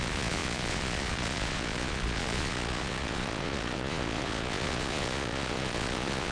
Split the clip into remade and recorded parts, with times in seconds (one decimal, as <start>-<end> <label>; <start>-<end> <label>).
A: 0.0-6.3 remade